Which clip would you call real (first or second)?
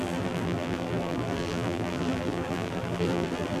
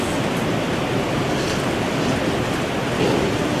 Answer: second